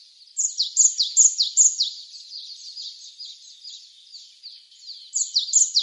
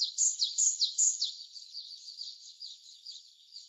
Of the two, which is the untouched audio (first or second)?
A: first